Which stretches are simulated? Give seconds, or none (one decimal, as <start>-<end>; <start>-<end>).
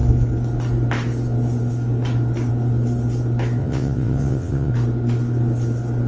3.6-4.7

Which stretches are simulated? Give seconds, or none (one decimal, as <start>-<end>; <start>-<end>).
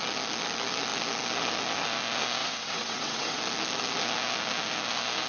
2.4-3.4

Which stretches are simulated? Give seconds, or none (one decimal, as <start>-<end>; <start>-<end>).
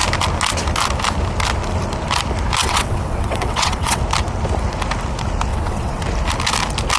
2.6-4.0; 5.5-6.0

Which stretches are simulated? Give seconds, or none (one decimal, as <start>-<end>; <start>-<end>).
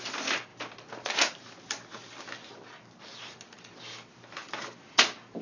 none